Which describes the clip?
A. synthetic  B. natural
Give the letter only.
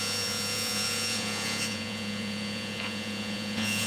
A